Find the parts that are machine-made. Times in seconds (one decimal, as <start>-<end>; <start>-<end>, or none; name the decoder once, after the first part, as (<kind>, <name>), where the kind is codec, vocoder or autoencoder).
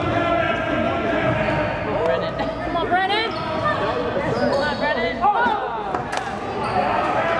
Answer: none